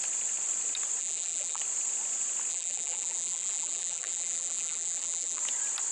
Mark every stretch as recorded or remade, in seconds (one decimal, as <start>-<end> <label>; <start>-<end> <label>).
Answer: 0.0-1.0 recorded; 1.0-1.6 remade; 1.6-2.5 recorded; 2.5-5.4 remade; 5.4-5.9 recorded